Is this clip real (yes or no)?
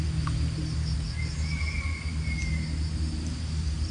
yes